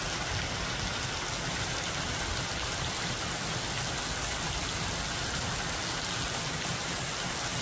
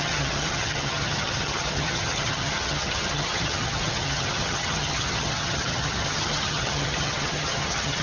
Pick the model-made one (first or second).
second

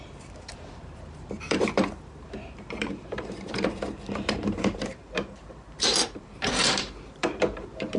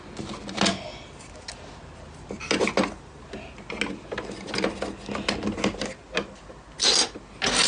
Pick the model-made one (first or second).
first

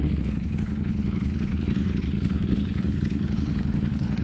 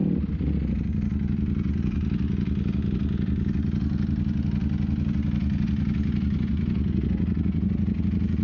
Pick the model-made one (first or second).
first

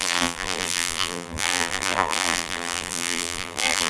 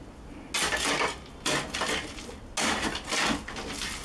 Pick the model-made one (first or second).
first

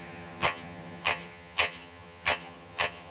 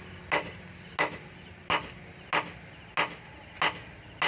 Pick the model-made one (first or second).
first